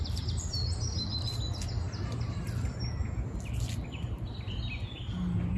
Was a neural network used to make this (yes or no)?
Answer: no